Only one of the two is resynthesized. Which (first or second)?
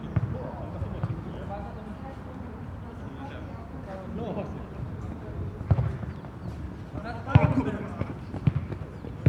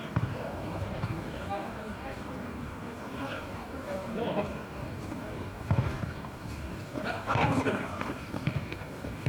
second